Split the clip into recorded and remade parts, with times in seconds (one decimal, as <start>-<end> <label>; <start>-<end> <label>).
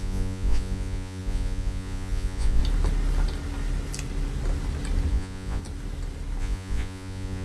0.0-2.6 remade; 2.6-5.1 recorded; 5.1-5.6 remade; 5.6-6.4 recorded; 6.4-7.4 remade